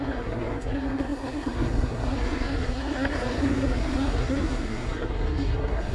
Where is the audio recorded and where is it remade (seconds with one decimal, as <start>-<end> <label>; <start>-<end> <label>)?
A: 0.0-5.9 remade

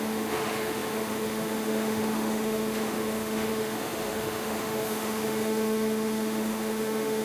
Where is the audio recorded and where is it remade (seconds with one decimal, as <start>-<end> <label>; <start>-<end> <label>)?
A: 0.0-7.2 remade

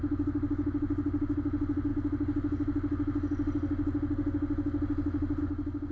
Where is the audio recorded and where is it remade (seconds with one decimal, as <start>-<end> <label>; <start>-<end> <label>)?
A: 0.0-5.9 recorded

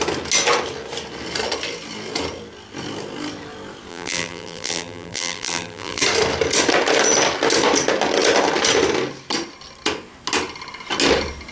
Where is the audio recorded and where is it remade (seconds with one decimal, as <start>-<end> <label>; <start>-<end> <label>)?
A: 0.0-3.9 recorded; 3.9-6.0 remade; 6.0-11.5 recorded